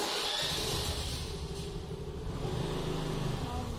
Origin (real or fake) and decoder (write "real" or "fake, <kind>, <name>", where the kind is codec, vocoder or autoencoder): real